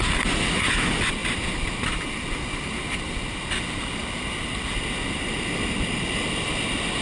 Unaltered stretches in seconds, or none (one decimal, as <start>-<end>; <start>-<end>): 0.0-7.0